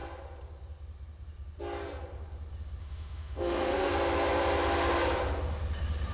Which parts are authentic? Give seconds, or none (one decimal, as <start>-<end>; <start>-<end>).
0.0-2.8; 3.9-6.1